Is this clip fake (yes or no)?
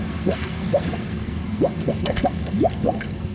yes